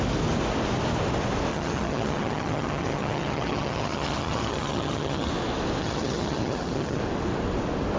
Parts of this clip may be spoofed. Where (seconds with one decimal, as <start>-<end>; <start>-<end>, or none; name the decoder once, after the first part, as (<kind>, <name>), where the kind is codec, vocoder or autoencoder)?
1.5-5.3 (vocoder, HiFi-GAN); 5.8-7.0